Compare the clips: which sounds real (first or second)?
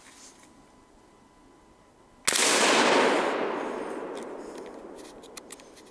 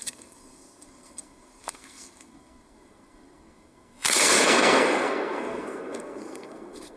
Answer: first